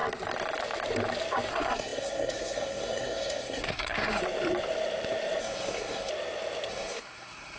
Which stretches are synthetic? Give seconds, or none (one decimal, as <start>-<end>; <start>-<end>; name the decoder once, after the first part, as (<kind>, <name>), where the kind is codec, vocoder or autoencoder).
1.5-4.2 (codec, SNAC); 5.4-6.1; 6.7-7.6